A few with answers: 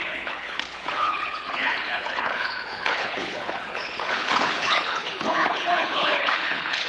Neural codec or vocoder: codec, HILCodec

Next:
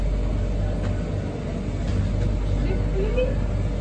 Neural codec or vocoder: none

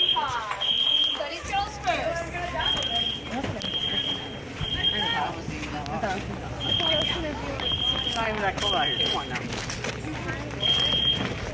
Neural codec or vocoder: none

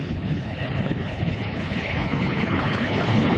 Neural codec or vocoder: codec, HILCodec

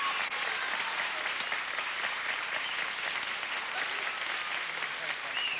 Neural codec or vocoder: none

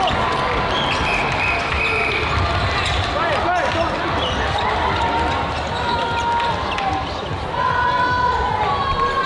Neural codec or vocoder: none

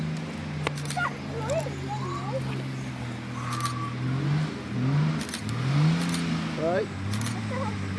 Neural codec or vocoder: none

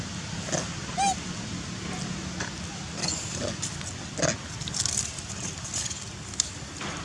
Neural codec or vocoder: none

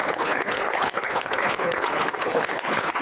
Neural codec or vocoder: codec, HILCodec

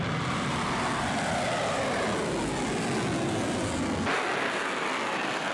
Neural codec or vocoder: none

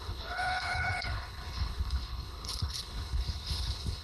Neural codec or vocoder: codec, HILCodec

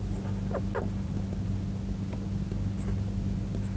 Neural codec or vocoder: none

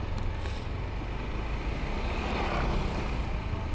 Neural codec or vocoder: none